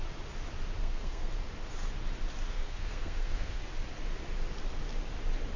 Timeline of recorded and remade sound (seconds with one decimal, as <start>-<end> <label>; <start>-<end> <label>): 0.0-0.8 recorded; 0.8-1.3 remade; 1.3-2.5 recorded; 2.5-3.6 remade; 3.6-5.6 recorded